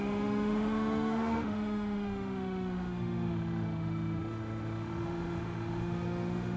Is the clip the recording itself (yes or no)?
no